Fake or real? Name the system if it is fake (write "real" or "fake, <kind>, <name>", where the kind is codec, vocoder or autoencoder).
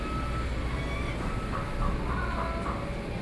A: real